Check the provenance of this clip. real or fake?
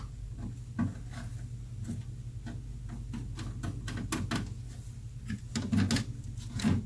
real